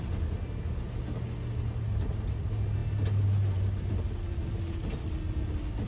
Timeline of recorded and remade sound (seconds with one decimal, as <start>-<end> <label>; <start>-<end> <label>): 0.0-5.9 recorded